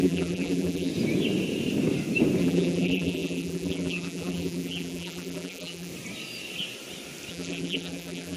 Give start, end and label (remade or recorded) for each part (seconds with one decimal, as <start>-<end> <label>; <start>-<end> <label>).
0.0-0.9 remade; 0.9-2.4 recorded; 2.4-5.9 remade; 5.9-7.3 recorded; 7.3-8.4 remade